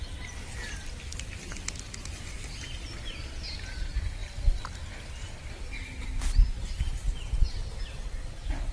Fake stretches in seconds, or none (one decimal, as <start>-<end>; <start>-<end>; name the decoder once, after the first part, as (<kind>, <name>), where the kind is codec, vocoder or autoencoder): none